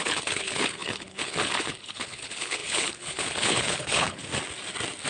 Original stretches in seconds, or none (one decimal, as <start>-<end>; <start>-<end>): 4.3-5.1